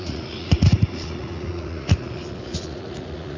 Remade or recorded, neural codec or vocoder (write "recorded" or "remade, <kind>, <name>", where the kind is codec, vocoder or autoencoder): remade, vocoder, Vocos